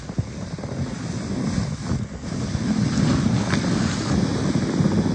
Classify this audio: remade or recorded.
recorded